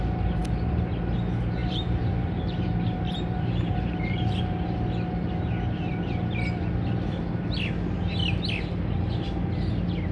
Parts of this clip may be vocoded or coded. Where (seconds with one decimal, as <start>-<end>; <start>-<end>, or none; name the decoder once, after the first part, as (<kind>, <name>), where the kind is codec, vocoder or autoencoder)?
1.6-4.4 (vocoder, BigVGAN v2)